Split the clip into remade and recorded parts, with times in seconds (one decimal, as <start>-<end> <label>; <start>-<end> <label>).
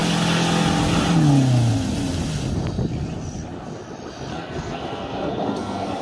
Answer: 0.0-4.3 recorded; 4.3-6.0 remade